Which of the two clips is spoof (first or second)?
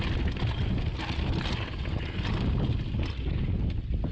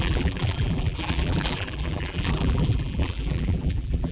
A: second